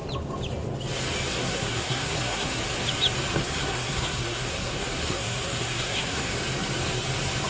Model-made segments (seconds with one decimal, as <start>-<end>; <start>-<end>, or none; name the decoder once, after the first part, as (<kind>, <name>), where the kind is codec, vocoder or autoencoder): 1.3-2.6 (codec, SNAC); 3.3-6.3